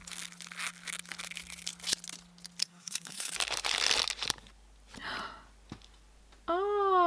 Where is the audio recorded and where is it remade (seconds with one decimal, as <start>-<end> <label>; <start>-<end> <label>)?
0.0-2.6 recorded; 2.6-3.3 remade; 3.3-7.1 recorded